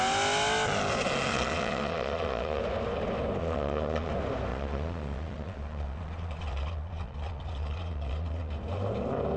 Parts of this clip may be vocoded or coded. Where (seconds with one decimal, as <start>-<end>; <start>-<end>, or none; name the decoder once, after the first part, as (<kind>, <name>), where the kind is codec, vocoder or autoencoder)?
1.3-2.6 (vocoder, Vocos); 3.4-4.1; 4.5-8.5